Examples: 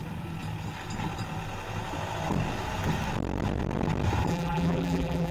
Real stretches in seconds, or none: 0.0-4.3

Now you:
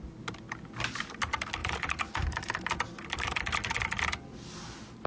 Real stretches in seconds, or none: 0.0-1.6; 2.5-5.1